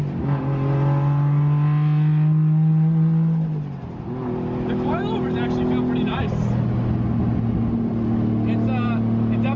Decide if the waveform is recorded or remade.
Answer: recorded